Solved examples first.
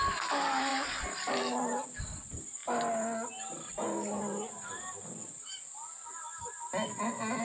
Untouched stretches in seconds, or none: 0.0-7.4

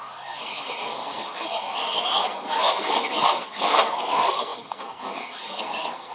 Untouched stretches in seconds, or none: none

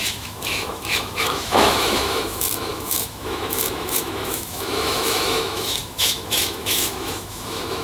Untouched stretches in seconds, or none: none

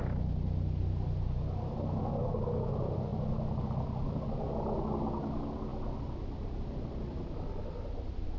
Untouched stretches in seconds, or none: 0.0-8.4

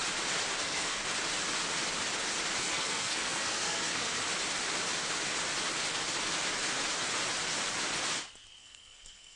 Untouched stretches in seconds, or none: 0.0-0.6; 1.0-2.6; 4.2-8.6